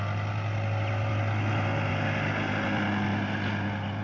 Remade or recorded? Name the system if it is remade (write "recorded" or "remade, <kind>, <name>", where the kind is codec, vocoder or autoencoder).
recorded